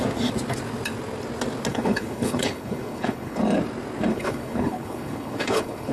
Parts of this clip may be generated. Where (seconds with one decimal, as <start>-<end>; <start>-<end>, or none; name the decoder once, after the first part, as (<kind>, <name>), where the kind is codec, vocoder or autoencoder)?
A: 1.7-3.4 (codec, HILCodec); 4.1-5.9